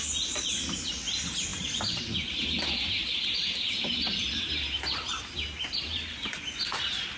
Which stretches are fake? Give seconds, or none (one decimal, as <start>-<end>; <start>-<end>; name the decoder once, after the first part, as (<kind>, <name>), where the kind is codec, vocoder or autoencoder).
none